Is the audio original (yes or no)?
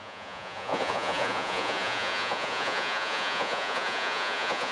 no